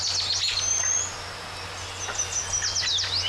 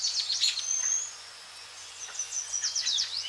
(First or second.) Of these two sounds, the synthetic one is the second